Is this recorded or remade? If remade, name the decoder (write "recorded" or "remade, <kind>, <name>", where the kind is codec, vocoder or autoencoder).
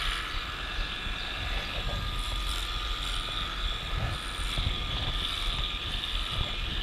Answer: recorded